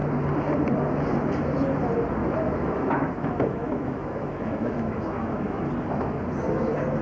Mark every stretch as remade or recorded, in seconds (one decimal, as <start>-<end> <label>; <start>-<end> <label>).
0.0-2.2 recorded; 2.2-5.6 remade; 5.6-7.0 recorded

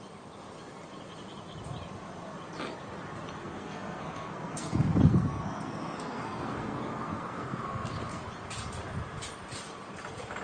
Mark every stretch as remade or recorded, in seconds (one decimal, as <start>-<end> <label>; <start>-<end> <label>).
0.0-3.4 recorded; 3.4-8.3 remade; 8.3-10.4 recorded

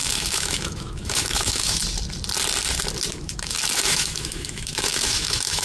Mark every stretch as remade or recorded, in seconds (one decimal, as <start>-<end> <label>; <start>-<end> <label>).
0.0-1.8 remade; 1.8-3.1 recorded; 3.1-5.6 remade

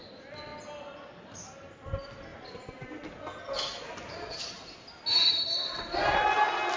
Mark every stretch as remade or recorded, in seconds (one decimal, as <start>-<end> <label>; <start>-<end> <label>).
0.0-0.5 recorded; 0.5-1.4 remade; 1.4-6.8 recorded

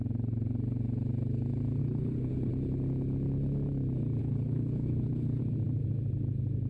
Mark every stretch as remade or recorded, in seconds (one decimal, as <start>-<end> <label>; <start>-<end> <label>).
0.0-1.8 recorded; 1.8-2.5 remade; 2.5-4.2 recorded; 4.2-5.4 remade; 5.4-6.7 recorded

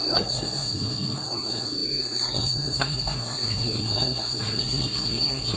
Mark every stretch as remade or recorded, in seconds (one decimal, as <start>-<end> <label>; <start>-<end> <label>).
0.0-5.6 remade

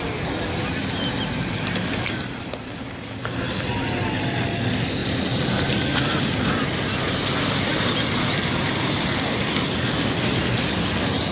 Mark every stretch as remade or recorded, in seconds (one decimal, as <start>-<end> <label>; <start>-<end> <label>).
0.0-11.3 recorded

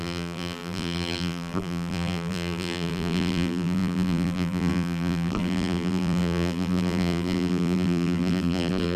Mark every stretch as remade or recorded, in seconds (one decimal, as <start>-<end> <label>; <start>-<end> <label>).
0.0-9.0 remade